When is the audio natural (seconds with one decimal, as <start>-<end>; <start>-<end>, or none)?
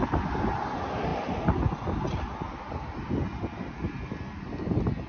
0.0-5.1